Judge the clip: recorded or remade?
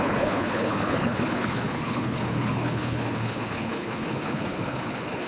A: remade